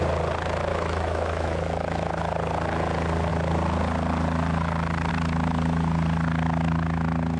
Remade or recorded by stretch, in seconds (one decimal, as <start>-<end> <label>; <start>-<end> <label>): 0.0-0.7 recorded; 0.7-2.1 remade; 2.1-7.4 recorded